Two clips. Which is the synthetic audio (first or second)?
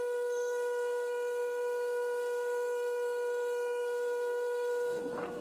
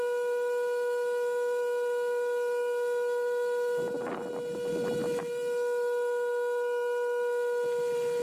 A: first